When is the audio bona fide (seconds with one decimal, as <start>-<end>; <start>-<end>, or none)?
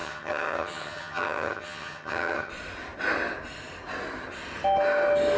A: 2.5-5.4